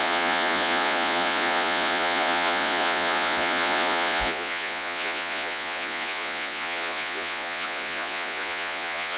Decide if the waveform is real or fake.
fake